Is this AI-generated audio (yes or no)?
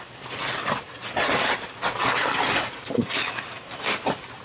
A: no